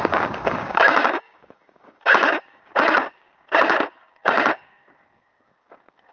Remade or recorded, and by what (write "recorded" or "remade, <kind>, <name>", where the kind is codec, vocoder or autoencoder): remade, codec, DAC